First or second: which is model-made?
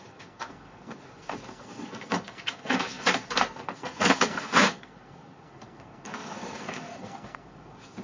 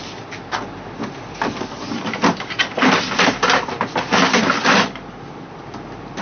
first